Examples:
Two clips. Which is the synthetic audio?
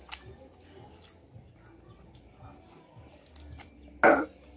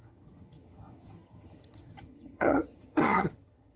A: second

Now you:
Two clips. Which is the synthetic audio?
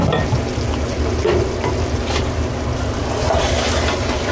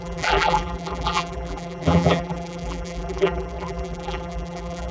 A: second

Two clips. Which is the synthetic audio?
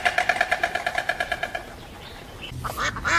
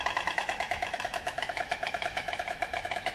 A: second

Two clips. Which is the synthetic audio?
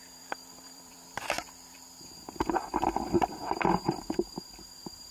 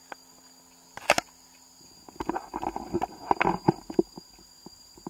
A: first